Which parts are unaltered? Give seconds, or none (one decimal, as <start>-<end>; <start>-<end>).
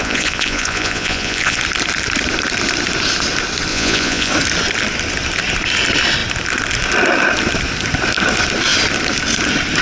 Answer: 1.6-3.7; 4.3-9.8